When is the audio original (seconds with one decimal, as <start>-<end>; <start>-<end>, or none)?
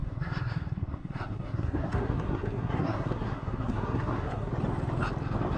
4.5-5.6